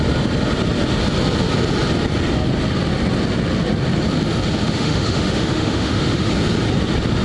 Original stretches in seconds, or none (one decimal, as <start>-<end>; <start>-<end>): 0.0-4.6; 6.3-7.2